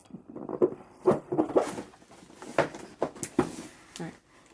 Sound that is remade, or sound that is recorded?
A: recorded